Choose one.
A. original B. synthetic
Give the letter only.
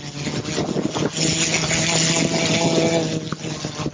A